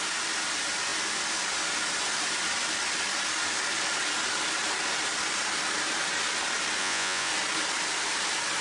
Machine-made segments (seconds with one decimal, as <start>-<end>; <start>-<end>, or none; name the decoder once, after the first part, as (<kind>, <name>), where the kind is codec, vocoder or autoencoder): 6.8-7.3 (vocoder, Vocos)